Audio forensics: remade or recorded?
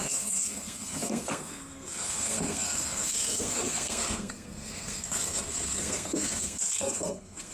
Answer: remade